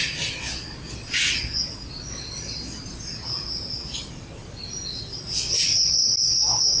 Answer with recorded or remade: recorded